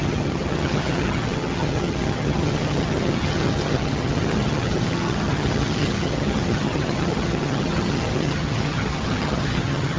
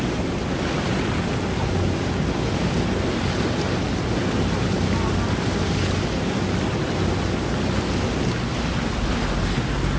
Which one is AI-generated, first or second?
first